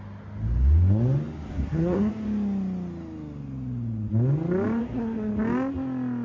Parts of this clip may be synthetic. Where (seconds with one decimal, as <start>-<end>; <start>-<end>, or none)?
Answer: 1.5-2.1; 4.8-5.3